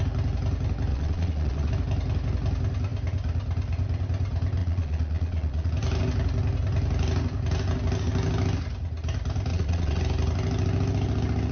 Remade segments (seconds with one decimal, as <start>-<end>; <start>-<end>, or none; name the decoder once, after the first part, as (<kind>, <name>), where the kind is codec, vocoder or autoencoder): 0.9-1.7 (vocoder, Vocos); 4.6-5.7; 9.5-10.0